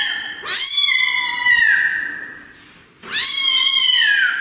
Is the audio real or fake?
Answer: fake